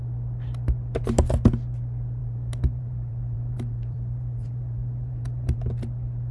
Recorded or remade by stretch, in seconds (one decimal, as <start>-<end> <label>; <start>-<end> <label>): 0.0-2.2 recorded; 2.2-5.7 remade; 5.7-6.3 recorded